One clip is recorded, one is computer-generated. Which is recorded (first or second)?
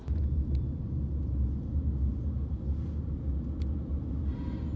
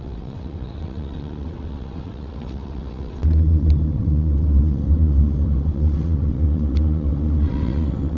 first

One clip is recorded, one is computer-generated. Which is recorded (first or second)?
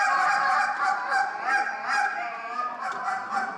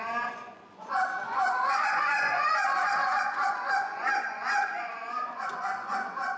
first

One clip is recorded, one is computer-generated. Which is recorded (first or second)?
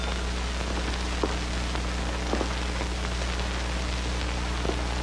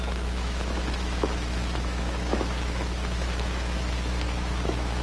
first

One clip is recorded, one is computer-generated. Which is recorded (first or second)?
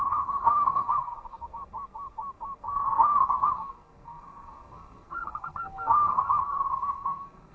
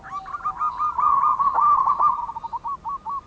second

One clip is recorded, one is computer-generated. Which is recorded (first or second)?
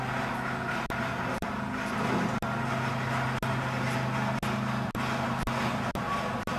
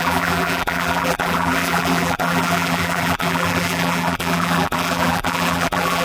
first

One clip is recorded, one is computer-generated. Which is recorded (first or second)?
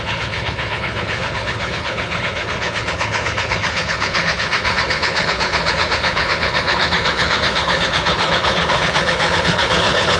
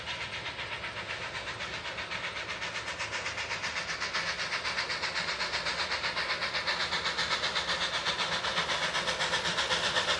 second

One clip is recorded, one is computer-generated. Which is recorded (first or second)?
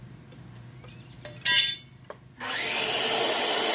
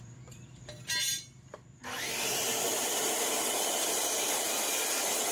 first